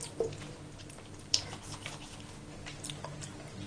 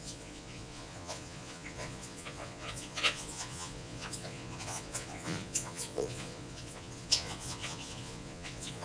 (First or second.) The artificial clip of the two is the second